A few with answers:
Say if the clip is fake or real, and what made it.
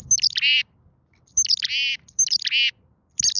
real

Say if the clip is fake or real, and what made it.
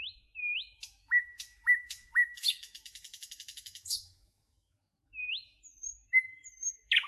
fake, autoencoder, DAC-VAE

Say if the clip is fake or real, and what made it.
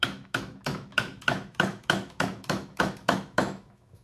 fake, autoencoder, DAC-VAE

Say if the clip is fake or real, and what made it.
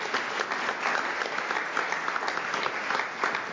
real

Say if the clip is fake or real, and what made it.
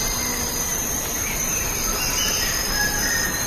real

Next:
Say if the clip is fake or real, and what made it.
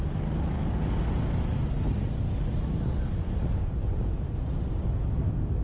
real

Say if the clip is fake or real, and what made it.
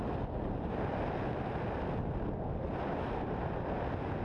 real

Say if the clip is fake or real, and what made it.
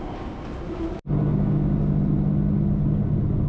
real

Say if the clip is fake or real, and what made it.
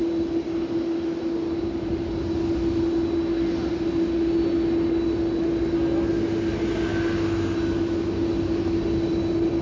real